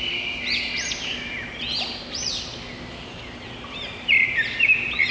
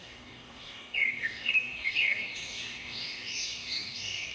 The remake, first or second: second